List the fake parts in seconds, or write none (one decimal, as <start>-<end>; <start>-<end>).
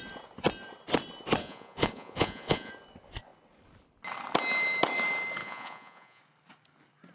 1.4-2.7; 5.4-6.2